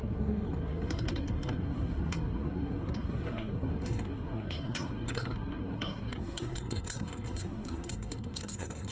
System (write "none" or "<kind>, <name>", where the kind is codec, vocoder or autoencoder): codec, SNAC